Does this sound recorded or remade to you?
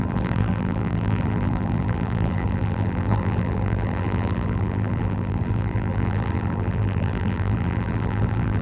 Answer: remade